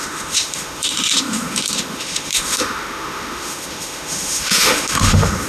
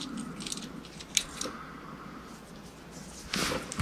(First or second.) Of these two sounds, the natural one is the second